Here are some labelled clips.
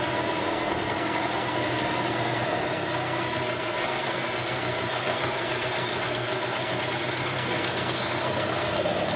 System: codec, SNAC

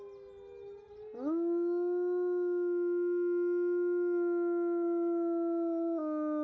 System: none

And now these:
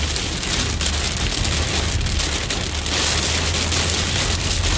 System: none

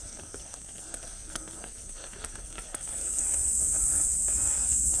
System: codec, SNAC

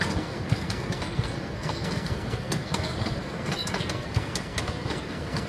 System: codec, SNAC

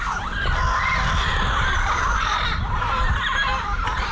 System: none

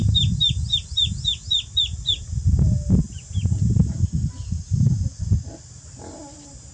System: none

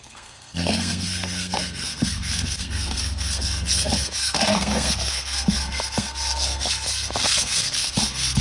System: codec, SNAC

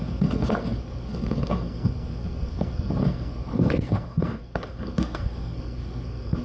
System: codec, SNAC